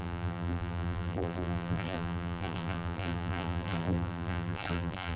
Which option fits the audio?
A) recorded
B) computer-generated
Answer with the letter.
B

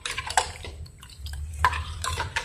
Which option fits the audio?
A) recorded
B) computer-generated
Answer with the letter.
B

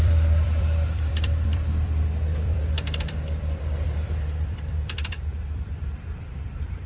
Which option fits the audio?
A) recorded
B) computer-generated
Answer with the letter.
B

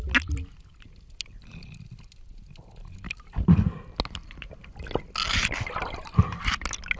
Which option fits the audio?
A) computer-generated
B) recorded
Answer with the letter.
B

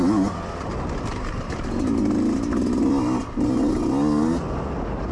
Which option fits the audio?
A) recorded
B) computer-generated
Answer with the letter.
A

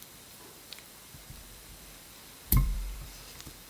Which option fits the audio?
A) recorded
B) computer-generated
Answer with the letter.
B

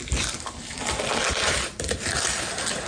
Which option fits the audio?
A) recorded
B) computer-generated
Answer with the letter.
A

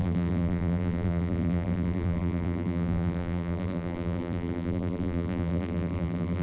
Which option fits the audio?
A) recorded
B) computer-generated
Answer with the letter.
B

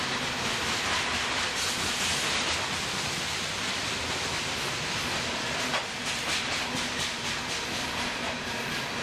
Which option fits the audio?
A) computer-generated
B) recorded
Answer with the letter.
B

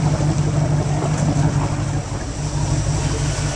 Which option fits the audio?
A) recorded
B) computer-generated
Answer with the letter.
A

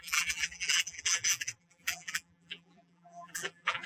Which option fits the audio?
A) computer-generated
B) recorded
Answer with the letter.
A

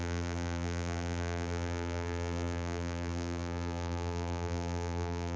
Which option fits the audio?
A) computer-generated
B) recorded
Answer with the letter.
A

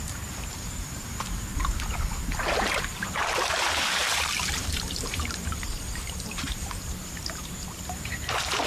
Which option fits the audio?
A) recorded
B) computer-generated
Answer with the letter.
B